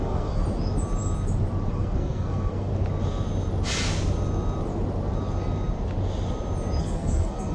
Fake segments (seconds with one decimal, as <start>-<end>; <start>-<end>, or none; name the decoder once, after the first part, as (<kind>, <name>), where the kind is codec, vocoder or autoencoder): 0.0-0.4 (codec, SNAC); 1.7-2.7; 6.8-7.5